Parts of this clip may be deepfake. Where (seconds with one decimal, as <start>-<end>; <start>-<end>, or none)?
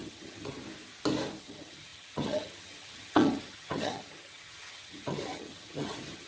0.0-0.6; 1.4-6.3